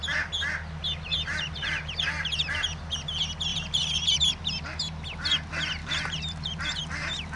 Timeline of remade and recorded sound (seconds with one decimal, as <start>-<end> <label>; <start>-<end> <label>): 0.0-1.1 recorded; 1.1-2.9 remade; 2.9-3.5 recorded; 3.5-4.3 remade; 4.3-5.8 recorded; 5.8-6.8 remade; 6.8-7.4 recorded